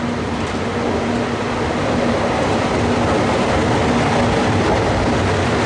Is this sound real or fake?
real